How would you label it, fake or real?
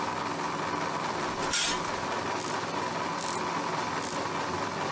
real